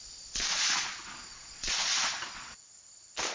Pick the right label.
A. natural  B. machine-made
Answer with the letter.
B